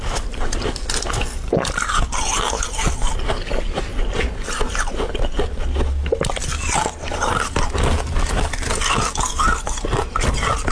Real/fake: real